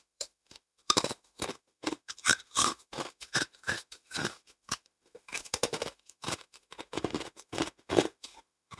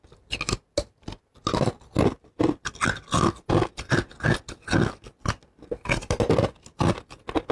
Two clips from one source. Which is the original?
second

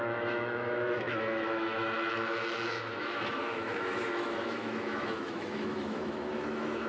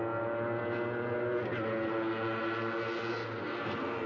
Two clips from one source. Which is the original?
second